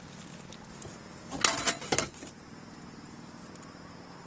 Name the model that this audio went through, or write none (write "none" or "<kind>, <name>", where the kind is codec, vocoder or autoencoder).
none